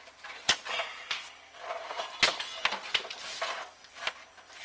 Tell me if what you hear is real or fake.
real